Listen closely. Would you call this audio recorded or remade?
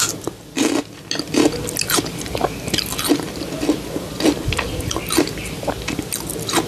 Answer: recorded